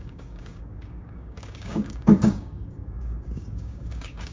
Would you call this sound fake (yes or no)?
yes